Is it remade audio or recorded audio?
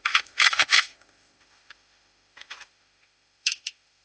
remade